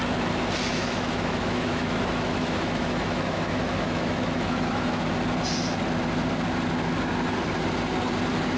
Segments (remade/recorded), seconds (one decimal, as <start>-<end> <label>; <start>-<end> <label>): 0.0-0.7 recorded; 0.7-5.1 remade; 5.1-8.6 recorded